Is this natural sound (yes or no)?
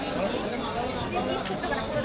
yes